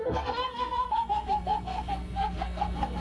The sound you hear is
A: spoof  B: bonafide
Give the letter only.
A